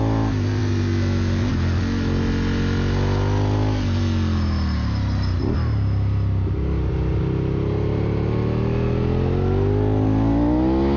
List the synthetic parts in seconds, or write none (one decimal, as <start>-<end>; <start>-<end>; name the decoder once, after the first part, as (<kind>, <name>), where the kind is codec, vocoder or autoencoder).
none